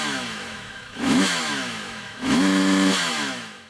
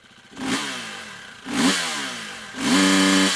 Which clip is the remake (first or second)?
first